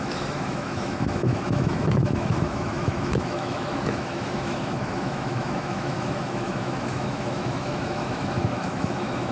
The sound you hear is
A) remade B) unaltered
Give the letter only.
A